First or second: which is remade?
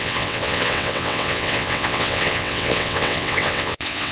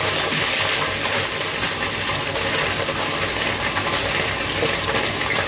first